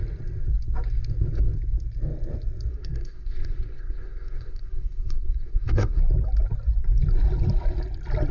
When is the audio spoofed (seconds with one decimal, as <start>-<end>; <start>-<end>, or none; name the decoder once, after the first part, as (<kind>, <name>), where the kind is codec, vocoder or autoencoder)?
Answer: 2.7-6.0 (codec, SNAC)